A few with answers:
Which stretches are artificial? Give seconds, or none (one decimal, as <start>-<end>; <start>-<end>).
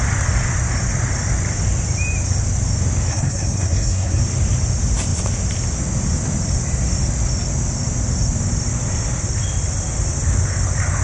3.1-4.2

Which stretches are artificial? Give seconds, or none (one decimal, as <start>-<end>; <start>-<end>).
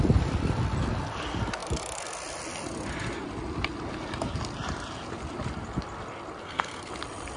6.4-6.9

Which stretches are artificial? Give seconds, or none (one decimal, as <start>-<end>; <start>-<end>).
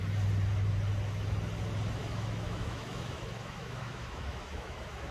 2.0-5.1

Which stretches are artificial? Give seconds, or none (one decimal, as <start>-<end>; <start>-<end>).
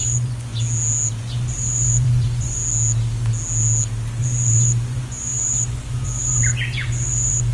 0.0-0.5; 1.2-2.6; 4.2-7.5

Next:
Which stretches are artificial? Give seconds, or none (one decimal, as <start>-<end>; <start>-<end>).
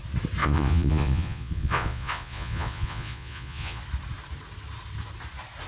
0.4-3.8